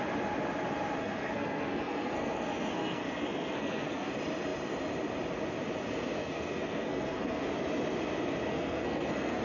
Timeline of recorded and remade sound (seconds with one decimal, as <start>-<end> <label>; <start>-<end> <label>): 0.0-1.0 recorded; 1.0-4.1 remade; 4.1-6.2 recorded; 6.2-7.5 remade; 7.5-8.5 recorded; 8.5-9.4 remade